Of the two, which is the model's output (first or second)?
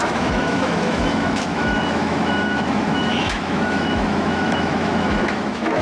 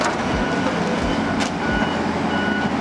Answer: first